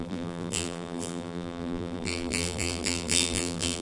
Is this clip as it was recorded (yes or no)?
no